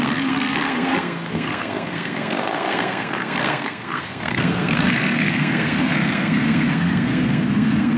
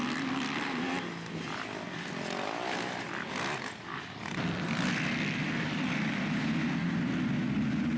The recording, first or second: second